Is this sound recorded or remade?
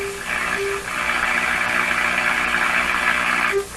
recorded